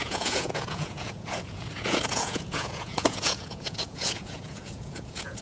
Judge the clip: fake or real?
fake